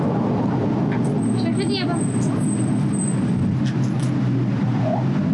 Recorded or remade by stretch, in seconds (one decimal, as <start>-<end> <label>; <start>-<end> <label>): 0.0-5.3 recorded